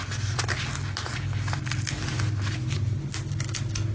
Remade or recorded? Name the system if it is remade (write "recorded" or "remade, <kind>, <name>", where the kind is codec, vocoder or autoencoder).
recorded